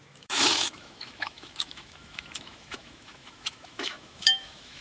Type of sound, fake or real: fake